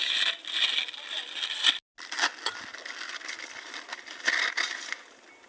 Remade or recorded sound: recorded